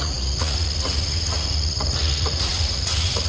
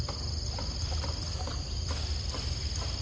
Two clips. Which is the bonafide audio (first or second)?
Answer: second